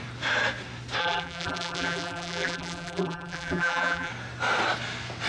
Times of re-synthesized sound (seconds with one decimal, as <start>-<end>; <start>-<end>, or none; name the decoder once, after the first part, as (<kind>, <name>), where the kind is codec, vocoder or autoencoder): 1.0-4.1 (vocoder, BigVGAN v2)